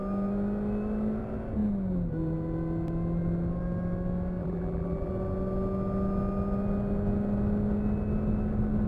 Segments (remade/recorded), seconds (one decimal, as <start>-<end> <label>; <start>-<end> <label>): 0.0-4.4 recorded; 4.4-5.1 remade; 5.1-8.9 recorded